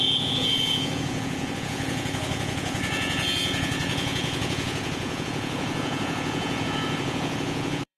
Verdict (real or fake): fake